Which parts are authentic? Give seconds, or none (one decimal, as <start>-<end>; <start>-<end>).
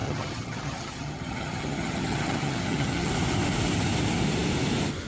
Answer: 3.1-5.1